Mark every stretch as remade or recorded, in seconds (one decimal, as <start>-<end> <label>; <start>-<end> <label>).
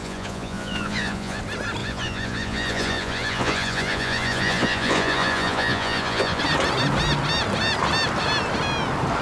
0.0-1.4 remade; 1.4-1.8 recorded; 1.8-6.4 remade; 6.4-9.2 recorded